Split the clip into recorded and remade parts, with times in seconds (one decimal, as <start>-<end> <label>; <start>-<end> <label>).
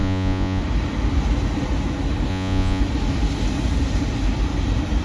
0.0-0.6 remade; 0.6-2.3 recorded; 2.3-2.8 remade; 2.8-5.0 recorded